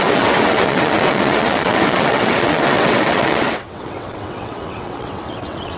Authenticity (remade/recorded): remade